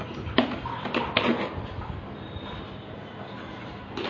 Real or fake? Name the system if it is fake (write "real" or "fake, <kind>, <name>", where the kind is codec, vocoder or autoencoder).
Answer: real